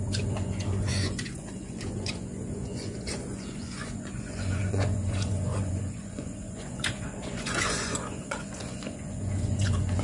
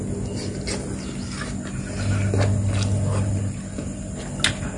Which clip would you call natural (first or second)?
second